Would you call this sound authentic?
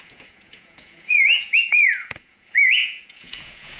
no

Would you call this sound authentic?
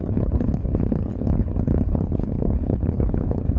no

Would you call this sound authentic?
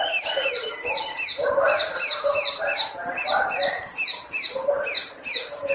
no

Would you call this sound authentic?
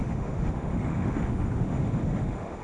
no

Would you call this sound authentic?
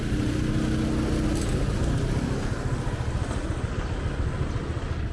yes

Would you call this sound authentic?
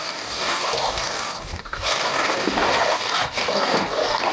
no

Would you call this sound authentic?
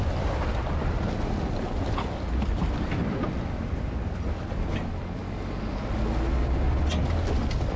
yes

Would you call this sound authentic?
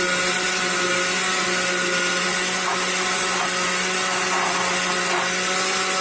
yes